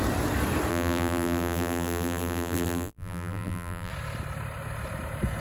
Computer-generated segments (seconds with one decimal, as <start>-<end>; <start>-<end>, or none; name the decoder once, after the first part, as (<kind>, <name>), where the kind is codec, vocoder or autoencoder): 0.7-3.9 (vocoder, BigVGAN v2)